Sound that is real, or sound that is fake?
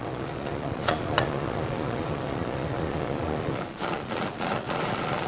fake